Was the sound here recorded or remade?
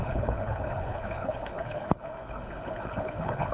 remade